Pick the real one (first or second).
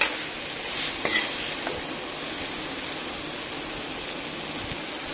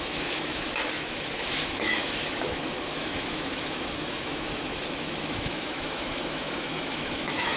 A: first